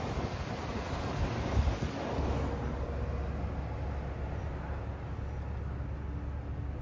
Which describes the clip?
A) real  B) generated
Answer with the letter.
A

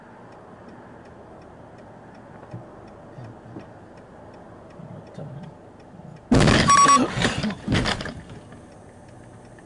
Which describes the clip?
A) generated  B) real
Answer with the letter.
B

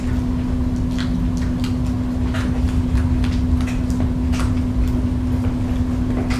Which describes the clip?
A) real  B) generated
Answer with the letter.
A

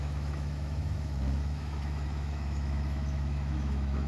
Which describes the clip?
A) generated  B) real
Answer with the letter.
A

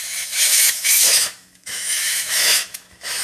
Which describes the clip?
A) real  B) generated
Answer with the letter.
B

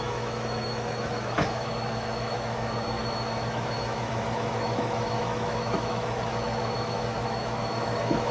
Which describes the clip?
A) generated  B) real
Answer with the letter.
A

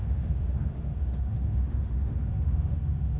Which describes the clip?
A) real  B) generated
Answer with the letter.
B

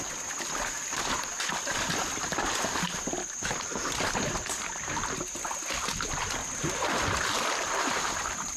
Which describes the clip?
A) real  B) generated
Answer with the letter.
A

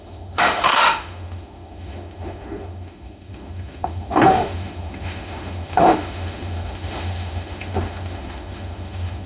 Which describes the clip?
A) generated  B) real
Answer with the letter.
A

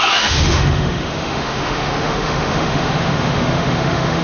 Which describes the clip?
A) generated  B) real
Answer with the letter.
A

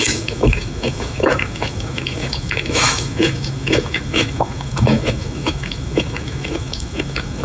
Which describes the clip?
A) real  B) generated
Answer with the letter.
B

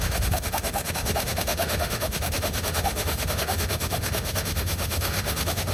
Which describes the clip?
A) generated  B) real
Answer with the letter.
A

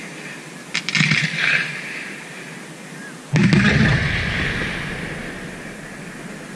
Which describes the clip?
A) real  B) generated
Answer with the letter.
A